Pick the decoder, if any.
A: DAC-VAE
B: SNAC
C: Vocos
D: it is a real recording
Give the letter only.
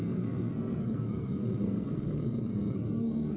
B